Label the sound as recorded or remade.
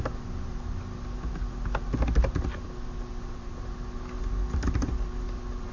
recorded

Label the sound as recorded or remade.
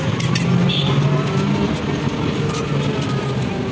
recorded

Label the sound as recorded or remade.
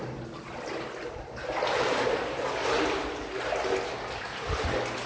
recorded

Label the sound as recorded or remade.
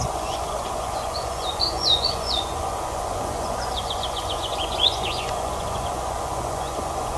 remade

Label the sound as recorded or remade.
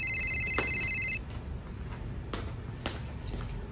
recorded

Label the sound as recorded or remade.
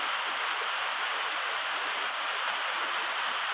recorded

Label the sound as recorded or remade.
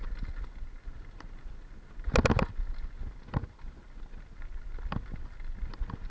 recorded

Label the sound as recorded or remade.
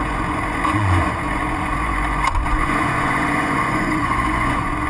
remade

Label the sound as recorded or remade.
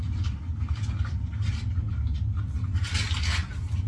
recorded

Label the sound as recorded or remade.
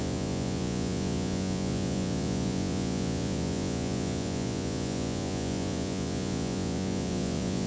remade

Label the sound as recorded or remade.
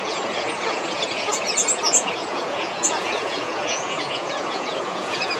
remade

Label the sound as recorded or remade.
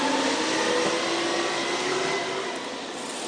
recorded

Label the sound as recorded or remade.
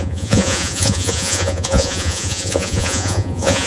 remade